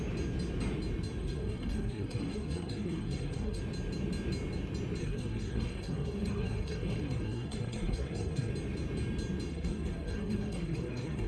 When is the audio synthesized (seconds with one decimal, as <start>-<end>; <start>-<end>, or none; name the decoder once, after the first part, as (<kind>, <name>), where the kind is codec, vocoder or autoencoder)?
1.2-3.6 (codec, SNAC); 5.0-8.5; 9.5-11.3